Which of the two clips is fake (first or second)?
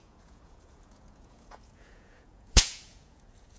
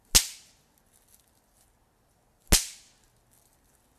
first